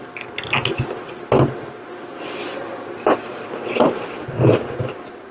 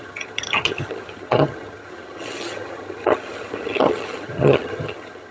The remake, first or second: second